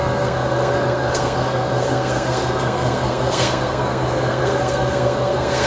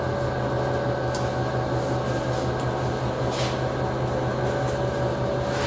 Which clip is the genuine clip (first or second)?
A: second